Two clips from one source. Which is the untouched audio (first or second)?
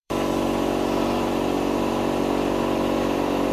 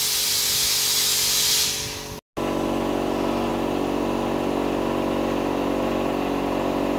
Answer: second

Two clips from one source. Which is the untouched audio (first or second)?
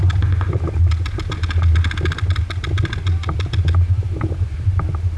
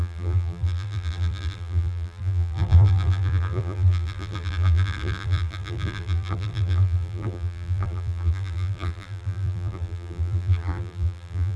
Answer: first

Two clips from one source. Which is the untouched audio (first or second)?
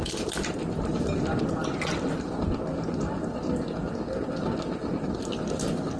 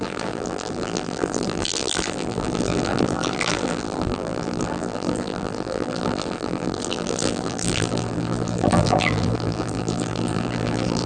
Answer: first